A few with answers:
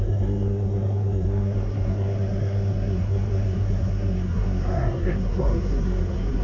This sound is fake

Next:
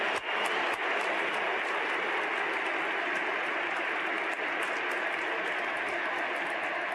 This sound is real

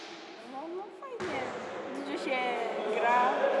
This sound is real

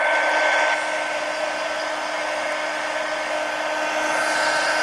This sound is real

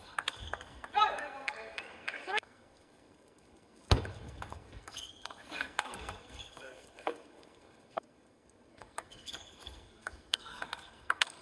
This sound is fake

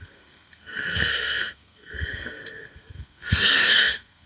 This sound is fake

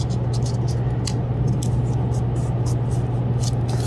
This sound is real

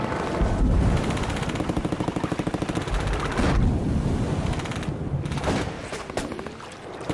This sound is real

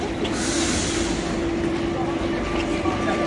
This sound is real